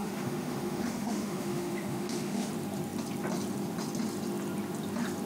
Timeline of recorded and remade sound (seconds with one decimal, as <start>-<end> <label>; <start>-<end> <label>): 0.0-2.5 remade; 2.5-5.3 recorded